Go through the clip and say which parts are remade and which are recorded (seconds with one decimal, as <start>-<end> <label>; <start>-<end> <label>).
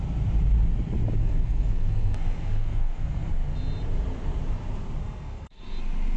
0.0-1.2 recorded; 1.2-3.3 remade; 3.3-5.0 recorded; 5.0-5.6 remade; 5.6-6.2 recorded